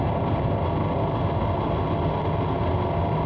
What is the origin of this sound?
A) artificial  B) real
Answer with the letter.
B